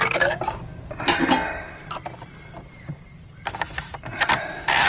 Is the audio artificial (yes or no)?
no